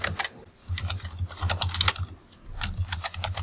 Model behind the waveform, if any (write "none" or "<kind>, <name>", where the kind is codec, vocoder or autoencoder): none